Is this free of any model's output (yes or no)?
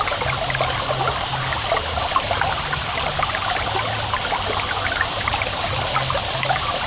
yes